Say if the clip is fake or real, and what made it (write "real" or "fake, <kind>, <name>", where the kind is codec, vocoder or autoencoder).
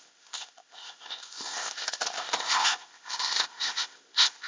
fake, codec, ZipCodec